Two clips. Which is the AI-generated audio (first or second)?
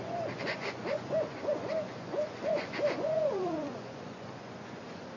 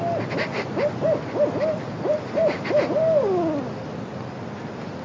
first